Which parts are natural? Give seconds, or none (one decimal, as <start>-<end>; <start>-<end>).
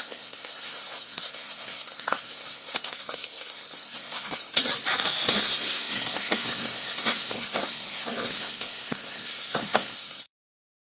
4.6-5.3